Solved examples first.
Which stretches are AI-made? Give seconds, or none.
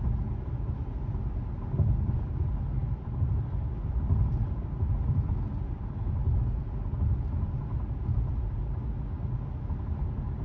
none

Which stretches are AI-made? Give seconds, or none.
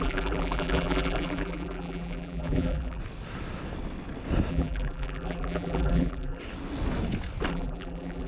0.0-3.0 (vocoder, BigVGAN v2); 4.5-6.4; 7.5-8.3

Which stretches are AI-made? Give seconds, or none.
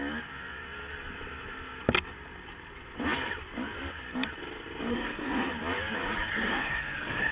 4.9-5.5 (codec, SNAC); 6.3-7.3